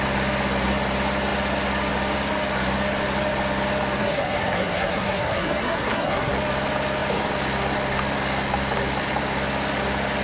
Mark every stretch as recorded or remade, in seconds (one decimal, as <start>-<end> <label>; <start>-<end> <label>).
0.0-4.0 recorded; 4.0-6.3 remade; 6.3-10.2 recorded